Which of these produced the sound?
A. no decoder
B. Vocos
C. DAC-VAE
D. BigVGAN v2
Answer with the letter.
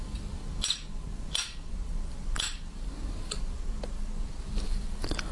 D